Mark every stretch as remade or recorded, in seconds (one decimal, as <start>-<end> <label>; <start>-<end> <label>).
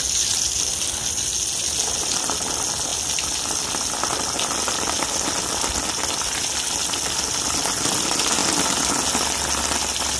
0.0-10.2 recorded